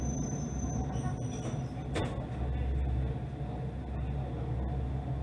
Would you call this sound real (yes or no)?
yes